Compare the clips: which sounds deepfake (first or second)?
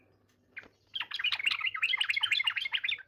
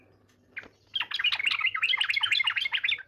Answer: first